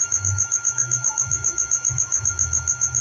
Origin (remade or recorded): remade